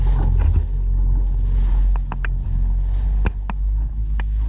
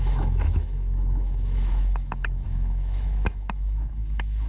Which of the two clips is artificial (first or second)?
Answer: second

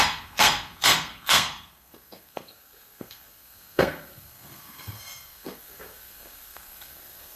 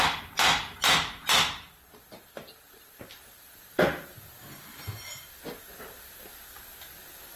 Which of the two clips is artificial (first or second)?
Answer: first